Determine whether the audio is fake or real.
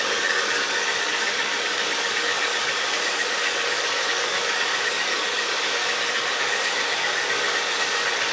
fake